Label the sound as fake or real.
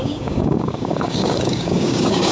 fake